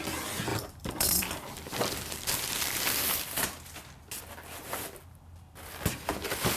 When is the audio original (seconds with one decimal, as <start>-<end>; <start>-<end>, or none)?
0.0-0.5; 3.4-6.6